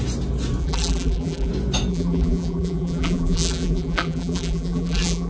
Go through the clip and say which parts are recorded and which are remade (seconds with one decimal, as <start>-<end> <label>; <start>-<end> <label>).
0.0-0.6 recorded; 0.6-1.5 remade; 1.5-1.9 recorded; 1.9-5.3 remade